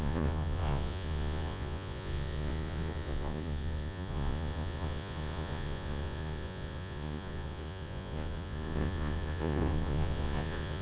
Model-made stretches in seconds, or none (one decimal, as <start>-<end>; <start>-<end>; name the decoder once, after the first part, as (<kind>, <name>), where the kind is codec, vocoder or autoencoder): 0.0-10.8 (vocoder, Vocos)